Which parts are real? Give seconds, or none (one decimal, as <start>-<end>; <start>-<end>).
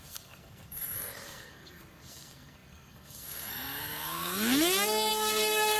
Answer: none